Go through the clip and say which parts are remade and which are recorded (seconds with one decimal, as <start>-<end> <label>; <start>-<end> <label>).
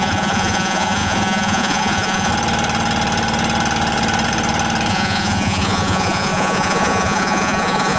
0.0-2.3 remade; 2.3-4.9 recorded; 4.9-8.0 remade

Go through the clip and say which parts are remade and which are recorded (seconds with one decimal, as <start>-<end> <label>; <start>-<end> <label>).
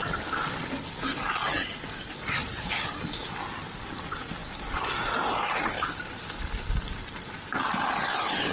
0.0-8.5 recorded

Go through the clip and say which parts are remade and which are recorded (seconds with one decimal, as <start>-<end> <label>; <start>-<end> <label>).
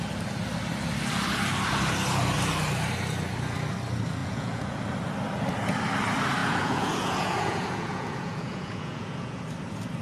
0.0-4.2 recorded; 4.2-4.8 remade; 4.8-6.4 recorded; 6.4-9.4 remade; 9.4-10.0 recorded